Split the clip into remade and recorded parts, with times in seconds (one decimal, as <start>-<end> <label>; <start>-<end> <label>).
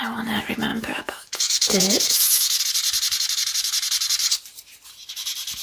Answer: 0.0-0.7 recorded; 0.7-2.6 remade; 2.6-5.6 recorded